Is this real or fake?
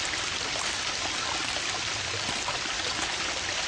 real